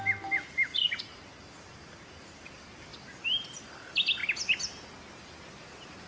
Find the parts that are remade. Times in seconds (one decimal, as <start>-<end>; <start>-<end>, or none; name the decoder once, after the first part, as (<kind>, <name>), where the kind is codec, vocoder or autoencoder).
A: 0.0-4.2 (vocoder, BigVGAN v2)